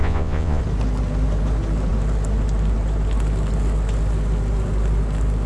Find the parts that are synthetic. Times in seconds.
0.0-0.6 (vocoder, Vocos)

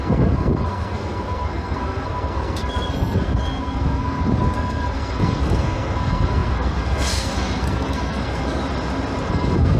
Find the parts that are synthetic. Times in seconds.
0.0-8.6 (codec, SNAC); 9.3-9.8

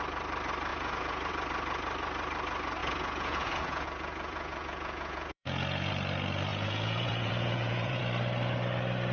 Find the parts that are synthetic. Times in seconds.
0.7-1.3 (vocoder, Vocos); 2.8-5.9; 6.5-8.0

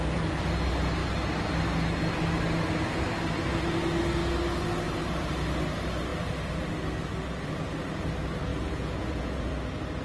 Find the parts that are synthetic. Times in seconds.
8.5-9.5 (vocoder, Vocos)

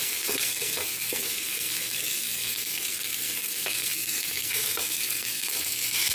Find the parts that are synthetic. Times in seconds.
0.0-6.1 (codec, SNAC)

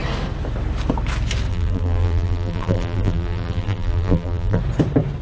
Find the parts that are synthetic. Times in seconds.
1.5-4.6 (vocoder, BigVGAN v2)